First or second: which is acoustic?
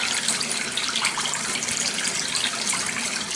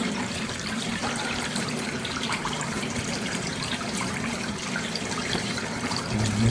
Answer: first